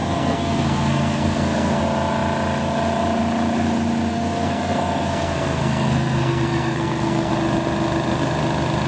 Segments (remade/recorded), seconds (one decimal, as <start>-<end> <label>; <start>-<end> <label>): 0.0-1.8 remade; 1.8-4.1 recorded; 4.1-7.3 remade; 7.3-8.9 recorded